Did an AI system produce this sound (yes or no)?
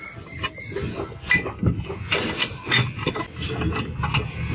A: no